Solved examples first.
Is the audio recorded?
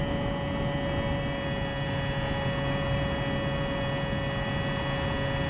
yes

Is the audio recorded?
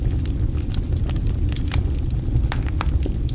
yes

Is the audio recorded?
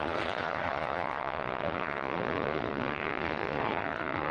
no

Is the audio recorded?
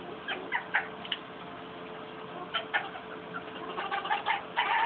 yes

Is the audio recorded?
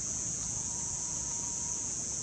no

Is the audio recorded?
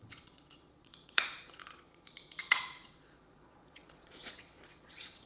no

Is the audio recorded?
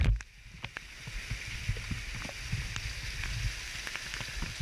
yes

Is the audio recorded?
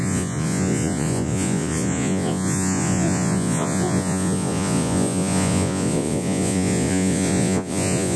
no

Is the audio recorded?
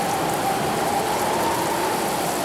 yes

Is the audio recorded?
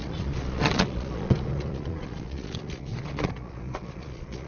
no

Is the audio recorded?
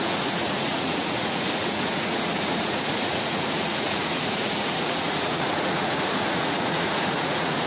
no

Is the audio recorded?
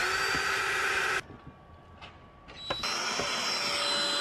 yes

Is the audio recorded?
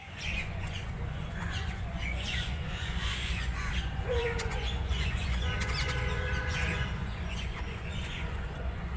no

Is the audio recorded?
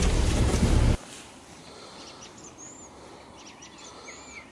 yes